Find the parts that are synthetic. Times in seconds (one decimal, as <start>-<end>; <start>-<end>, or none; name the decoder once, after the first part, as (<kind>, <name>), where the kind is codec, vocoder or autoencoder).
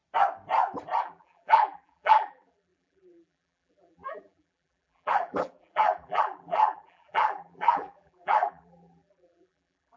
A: 1.0-10.0 (vocoder, BigVGAN v2)